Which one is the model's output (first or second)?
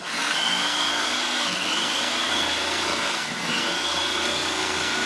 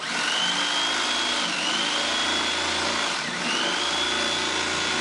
first